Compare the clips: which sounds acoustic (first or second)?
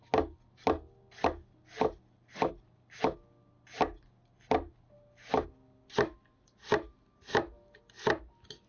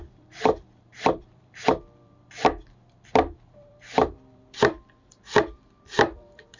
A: first